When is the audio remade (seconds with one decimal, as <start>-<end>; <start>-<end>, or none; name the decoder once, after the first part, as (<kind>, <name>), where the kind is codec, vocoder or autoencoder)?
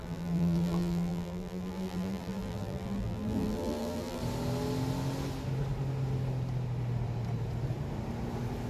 0.0-4.2 (vocoder, BigVGAN v2)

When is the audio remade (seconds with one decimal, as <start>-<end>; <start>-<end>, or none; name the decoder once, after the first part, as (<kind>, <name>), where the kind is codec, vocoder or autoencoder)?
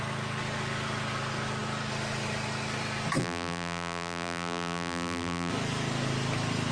3.2-5.5 (vocoder, BigVGAN v2)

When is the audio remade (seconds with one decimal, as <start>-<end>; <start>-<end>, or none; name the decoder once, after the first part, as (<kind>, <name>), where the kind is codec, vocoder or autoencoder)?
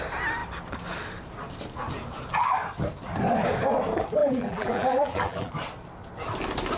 4.2-5.5 (vocoder, BigVGAN v2)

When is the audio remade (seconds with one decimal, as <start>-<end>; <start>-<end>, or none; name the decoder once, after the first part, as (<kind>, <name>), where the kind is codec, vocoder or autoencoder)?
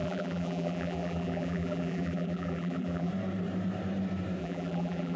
0.0-3.1 (vocoder, BigVGAN v2); 4.4-5.2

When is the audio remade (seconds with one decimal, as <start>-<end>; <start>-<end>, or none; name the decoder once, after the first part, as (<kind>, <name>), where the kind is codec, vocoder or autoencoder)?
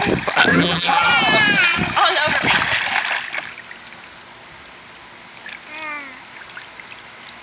0.5-1.1 (vocoder, BigVGAN v2)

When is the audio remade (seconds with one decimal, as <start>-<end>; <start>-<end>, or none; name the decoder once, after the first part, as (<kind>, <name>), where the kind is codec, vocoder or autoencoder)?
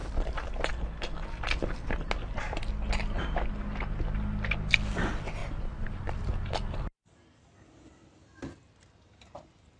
0.0-0.7 (vocoder, BigVGAN v2); 5.4-7.4